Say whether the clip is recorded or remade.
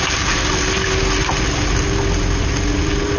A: recorded